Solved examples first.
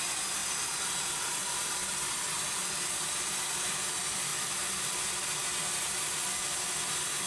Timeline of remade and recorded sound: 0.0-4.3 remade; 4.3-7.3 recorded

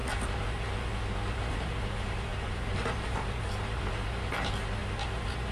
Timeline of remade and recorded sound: 0.0-2.3 recorded; 2.3-3.8 remade; 3.8-5.5 recorded

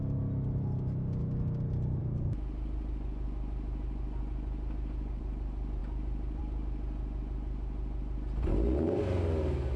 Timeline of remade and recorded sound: 0.0-9.8 recorded

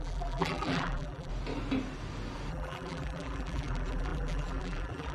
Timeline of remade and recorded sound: 0.0-1.3 remade; 1.3-2.5 recorded; 2.5-5.1 remade

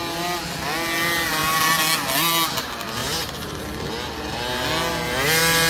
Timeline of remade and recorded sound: 0.0-3.0 recorded; 3.0-3.6 remade; 3.6-5.7 recorded

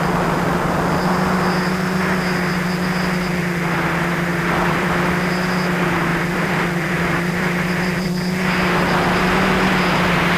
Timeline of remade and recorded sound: 0.0-4.3 recorded; 4.3-5.0 remade; 5.0-6.1 recorded; 6.1-8.1 remade; 8.1-10.4 recorded

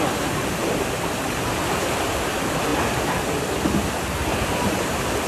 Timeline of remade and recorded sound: 0.0-5.3 remade

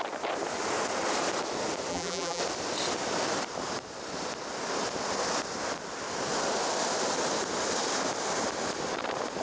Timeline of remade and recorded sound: 0.0-1.9 recorded; 1.9-2.4 remade; 2.4-9.4 recorded